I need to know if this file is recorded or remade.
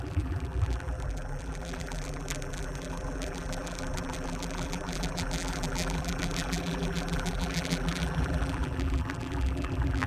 remade